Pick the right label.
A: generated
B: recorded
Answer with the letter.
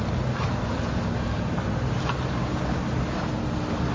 B